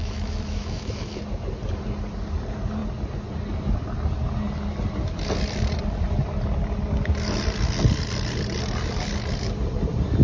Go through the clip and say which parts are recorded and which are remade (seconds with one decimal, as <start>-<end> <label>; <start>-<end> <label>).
0.0-1.2 remade; 1.2-10.2 recorded